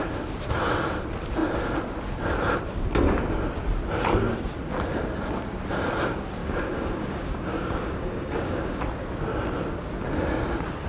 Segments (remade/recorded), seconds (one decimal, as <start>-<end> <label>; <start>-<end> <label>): 0.0-6.4 recorded; 6.4-8.8 remade; 8.8-10.9 recorded